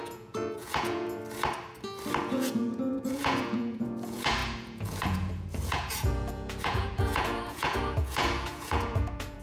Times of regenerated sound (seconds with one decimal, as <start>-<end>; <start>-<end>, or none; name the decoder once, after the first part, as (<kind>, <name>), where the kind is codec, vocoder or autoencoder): 0.0-1.2 (vocoder, Vocos); 2.2-9.4